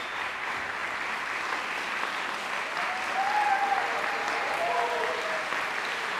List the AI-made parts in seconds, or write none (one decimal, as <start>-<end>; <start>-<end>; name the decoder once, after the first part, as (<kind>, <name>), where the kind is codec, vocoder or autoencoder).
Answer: 0.0-0.8 (vocoder, BigVGAN v2); 4.1-6.2